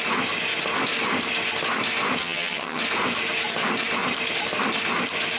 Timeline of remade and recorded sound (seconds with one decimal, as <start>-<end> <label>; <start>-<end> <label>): 0.0-2.2 recorded; 2.2-2.8 remade; 2.8-5.4 recorded